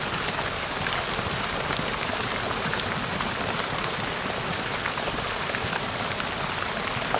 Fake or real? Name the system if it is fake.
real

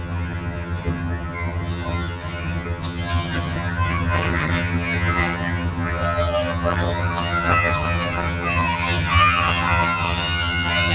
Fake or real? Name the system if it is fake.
fake, vocoder, HiFi-GAN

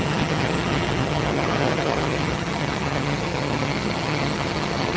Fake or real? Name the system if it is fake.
fake, vocoder, HiFi-GAN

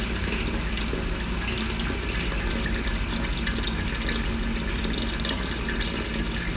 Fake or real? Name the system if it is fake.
real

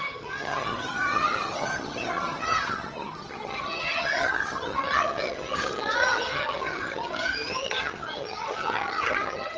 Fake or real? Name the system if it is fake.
fake, vocoder, HiFi-GAN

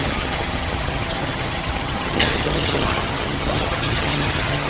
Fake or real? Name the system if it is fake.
fake, vocoder, HiFi-GAN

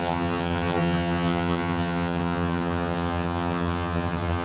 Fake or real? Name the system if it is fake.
fake, vocoder, HiFi-GAN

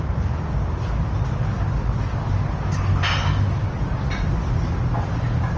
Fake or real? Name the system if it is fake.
real